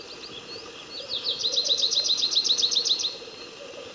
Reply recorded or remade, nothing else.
recorded